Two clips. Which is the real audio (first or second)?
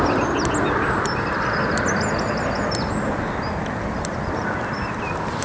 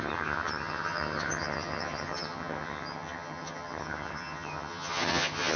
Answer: first